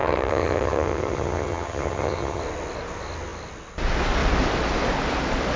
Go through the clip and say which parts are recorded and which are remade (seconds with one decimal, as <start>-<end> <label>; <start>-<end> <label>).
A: 0.0-2.4 remade; 2.4-5.6 recorded